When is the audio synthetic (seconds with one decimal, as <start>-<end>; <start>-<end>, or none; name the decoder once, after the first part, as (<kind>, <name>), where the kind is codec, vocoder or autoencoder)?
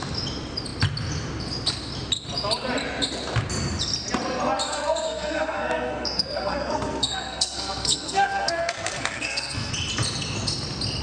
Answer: 4.7-9.7 (codec, SNAC)